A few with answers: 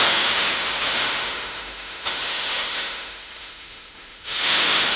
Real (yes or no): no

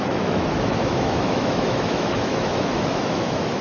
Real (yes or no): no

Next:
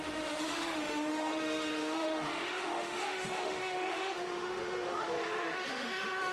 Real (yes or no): no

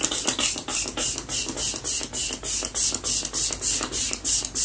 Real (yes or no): yes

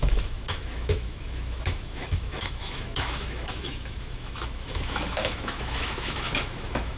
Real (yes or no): no